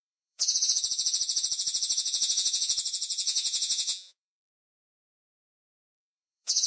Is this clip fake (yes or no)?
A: yes